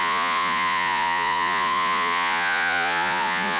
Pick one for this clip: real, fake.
fake